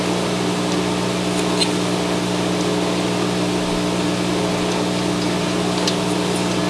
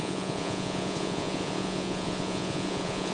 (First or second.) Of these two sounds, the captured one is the first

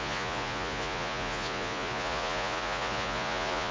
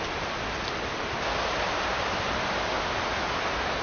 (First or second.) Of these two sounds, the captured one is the second